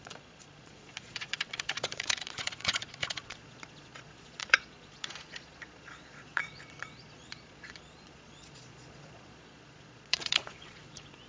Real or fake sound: fake